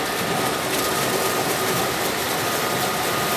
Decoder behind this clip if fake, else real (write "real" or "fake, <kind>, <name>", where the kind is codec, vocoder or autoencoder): real